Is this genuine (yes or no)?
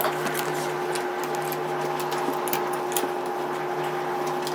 yes